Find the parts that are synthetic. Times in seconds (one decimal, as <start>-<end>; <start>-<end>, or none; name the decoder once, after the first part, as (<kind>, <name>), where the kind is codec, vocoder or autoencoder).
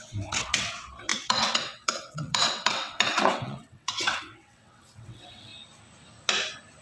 0.0-5.5 (vocoder, WaveNeXt)